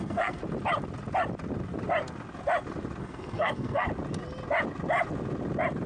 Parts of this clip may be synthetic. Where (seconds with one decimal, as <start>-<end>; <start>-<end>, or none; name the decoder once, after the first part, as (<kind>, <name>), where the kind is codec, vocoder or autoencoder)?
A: 0.0-0.4 (codec, SNAC); 3.0-3.9